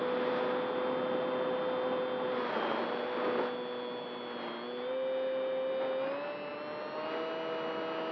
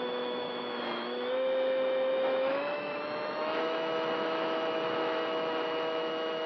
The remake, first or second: second